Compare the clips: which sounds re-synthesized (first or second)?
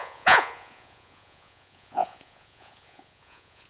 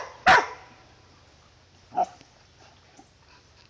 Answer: first